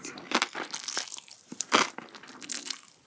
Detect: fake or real real